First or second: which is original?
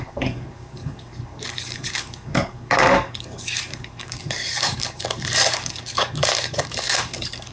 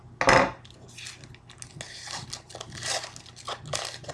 second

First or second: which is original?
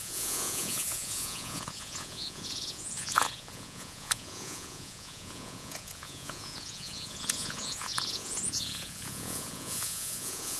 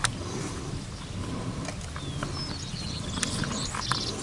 second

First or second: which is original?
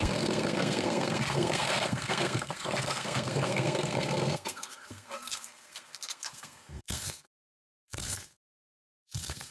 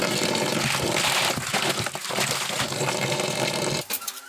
second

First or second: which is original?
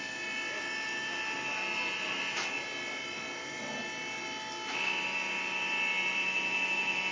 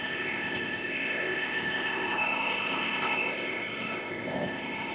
first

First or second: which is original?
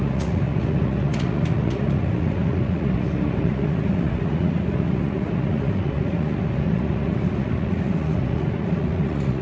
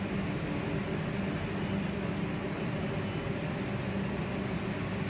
second